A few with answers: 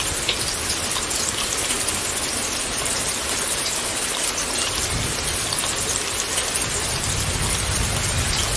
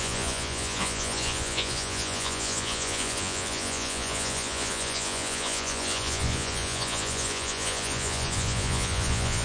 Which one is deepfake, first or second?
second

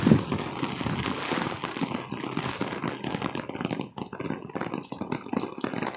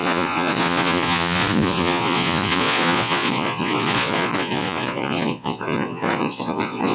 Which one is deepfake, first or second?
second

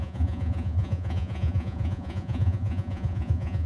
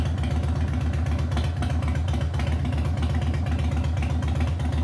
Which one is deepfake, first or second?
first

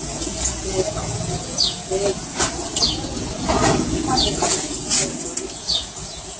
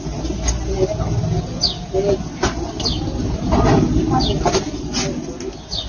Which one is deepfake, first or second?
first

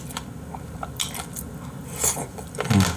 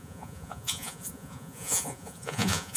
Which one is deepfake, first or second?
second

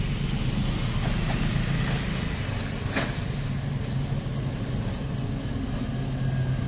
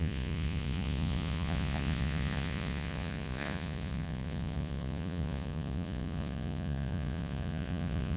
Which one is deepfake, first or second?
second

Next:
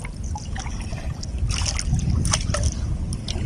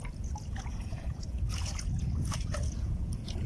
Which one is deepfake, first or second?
second